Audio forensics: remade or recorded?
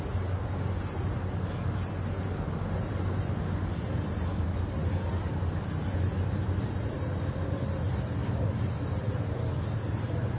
recorded